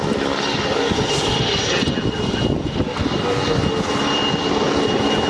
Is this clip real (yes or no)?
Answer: yes